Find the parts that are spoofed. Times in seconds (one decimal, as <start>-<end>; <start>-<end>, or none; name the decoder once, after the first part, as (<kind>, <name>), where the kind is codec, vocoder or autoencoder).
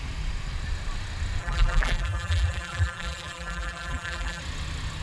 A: 1.4-4.4 (vocoder, BigVGAN v2)